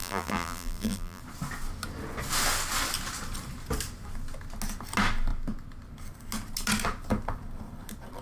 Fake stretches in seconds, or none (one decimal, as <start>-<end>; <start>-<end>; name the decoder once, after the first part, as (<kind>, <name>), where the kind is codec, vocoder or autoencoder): 0.0-1.2 (vocoder, BigVGAN v2)

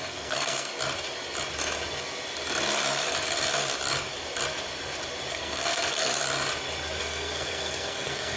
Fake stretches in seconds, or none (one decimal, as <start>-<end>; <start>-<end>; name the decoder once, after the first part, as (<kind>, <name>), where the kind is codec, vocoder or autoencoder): 0.0-0.7 (codec, SNAC); 5.3-6.1; 7.0-8.4

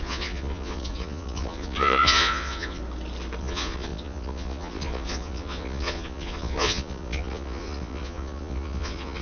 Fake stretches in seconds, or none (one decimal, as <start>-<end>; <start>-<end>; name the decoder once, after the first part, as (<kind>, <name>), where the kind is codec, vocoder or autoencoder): 0.0-2.8 (vocoder, Vocos); 3.4-9.2

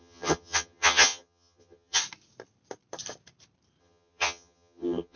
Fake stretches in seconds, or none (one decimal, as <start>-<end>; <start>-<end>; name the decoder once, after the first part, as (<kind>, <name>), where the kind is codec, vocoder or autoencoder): 0.0-2.0 (vocoder, HiFi-GAN); 3.8-5.2

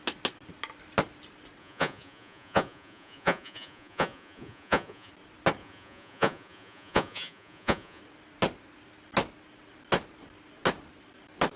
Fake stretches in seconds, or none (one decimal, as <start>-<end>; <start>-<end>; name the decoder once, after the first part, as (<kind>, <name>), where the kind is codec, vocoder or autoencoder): 1.6-5.1 (vocoder, Vocos); 5.6-8.0

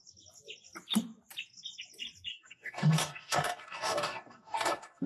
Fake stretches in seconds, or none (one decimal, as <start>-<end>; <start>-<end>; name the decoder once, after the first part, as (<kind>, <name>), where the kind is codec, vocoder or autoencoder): 2.3-5.1 (codec, DAC)

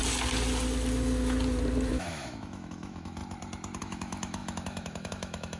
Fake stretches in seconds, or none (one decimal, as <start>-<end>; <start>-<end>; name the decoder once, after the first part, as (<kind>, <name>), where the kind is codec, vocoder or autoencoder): 1.9-3.2 (autoencoder, DAC-VAE); 3.8-5.6